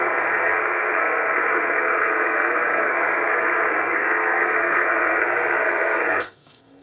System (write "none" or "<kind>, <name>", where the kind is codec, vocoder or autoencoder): codec, SNAC